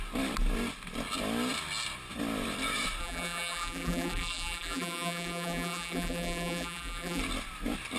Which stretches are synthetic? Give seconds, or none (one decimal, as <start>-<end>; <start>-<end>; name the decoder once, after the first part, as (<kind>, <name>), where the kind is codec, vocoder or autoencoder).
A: 3.0-7.2 (vocoder, BigVGAN v2)